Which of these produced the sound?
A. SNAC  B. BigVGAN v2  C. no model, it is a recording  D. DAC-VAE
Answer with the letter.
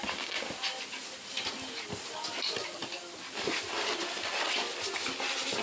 C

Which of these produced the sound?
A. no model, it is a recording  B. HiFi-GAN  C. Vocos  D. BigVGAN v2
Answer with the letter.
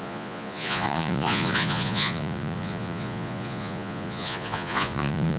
C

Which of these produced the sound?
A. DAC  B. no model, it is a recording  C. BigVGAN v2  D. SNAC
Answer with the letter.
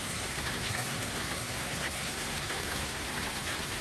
D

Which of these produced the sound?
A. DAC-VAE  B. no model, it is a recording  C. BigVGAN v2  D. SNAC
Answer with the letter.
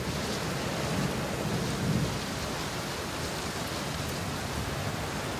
B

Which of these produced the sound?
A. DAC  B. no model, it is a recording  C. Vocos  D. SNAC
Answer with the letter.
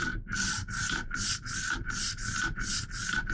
B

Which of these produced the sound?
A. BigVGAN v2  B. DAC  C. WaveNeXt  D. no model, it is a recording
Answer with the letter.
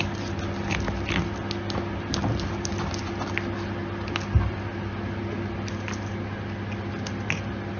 D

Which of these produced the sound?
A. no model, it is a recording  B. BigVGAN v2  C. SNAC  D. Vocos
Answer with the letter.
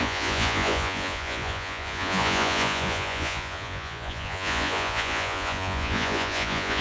D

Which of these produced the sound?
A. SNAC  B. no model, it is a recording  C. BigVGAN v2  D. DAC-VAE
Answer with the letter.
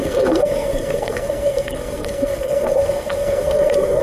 A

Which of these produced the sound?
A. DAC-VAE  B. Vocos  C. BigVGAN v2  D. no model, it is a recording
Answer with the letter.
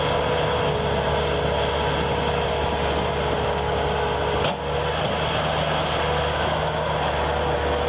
D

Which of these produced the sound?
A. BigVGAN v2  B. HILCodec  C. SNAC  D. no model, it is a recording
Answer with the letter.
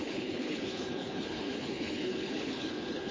B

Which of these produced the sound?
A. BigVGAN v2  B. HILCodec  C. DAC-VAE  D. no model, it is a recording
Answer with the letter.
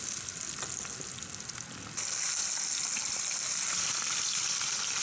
D